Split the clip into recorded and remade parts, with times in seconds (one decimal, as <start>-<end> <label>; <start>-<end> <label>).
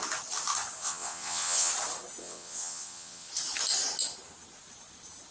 0.0-0.8 recorded; 0.8-1.7 remade; 1.7-2.2 recorded; 2.2-3.3 remade; 3.3-5.3 recorded